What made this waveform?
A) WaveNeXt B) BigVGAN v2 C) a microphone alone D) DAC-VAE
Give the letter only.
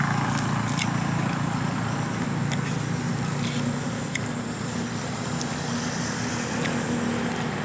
C